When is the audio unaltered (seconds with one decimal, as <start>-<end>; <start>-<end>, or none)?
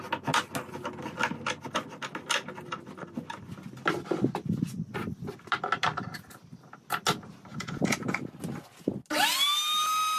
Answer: 0.0-7.5; 8.3-10.2